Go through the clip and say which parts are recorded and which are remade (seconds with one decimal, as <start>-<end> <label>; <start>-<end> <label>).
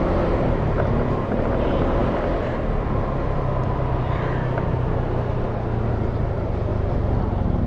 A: 0.0-2.0 remade; 2.0-5.9 recorded; 5.9-6.7 remade; 6.7-7.2 recorded; 7.2-7.7 remade